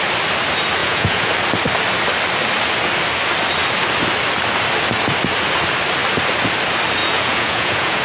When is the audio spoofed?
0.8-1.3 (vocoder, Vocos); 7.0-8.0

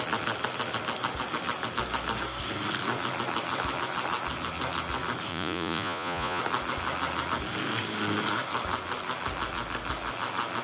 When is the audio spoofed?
5.3-6.4 (vocoder, Vocos)